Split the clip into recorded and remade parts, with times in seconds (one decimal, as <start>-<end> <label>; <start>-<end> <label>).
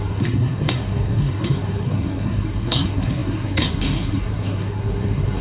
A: 0.0-5.4 remade